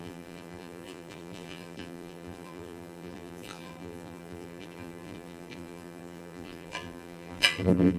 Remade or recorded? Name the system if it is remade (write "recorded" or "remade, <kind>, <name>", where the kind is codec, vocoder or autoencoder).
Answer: remade, vocoder, BigVGAN v2